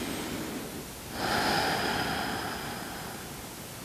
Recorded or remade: recorded